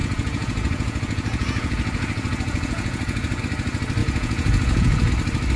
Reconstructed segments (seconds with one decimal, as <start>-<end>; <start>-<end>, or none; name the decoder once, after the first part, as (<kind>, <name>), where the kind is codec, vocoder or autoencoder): 0.0-3.4 (vocoder, Vocos); 4.0-5.1